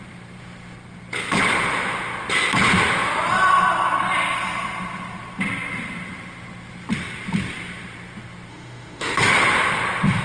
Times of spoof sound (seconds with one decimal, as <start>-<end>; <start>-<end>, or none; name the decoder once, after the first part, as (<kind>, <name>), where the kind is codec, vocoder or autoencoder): 8.5-9.3 (autoencoder, DAC-VAE)

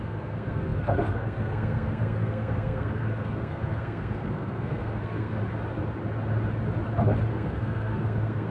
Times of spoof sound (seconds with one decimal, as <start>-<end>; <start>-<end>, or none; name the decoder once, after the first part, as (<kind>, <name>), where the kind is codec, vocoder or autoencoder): 0.0-5.4 (codec, SNAC); 7.3-8.5